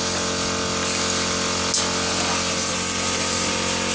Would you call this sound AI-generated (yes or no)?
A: no